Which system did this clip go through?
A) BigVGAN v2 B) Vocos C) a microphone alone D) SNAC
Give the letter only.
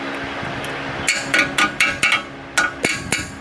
C